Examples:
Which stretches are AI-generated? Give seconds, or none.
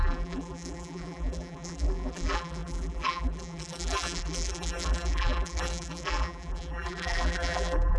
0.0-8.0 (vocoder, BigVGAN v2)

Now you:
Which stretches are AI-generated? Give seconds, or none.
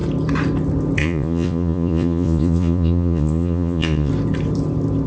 1.0-4.1 (vocoder, Vocos)